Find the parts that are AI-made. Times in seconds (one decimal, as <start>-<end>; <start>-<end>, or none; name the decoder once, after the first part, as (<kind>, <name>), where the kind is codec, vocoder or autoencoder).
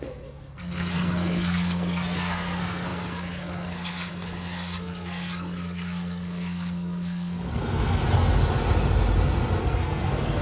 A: 0.0-8.0 (codec, SNAC); 9.6-10.4